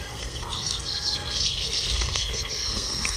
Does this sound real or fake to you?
fake